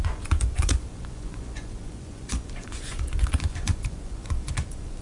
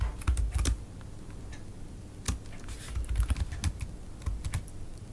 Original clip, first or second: second